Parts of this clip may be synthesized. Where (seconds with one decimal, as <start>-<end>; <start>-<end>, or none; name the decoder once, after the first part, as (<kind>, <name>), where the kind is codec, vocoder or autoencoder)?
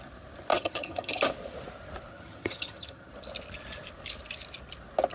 0.5-1.2 (vocoder, HiFi-GAN); 2.1-3.1